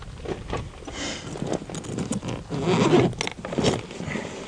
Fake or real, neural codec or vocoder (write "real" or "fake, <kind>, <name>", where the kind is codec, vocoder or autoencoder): real